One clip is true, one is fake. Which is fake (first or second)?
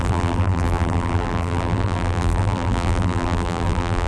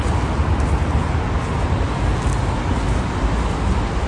first